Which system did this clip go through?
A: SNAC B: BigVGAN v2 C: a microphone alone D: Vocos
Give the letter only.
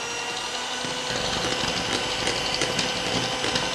C